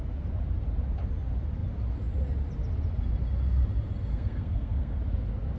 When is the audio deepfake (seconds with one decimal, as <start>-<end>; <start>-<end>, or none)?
4.1-5.0

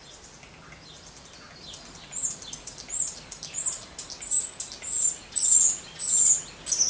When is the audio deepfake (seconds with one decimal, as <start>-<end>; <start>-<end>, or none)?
none